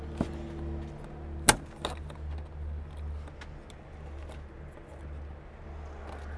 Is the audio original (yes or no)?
yes